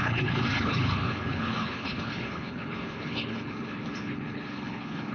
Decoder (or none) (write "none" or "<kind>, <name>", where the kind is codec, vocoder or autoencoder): codec, HILCodec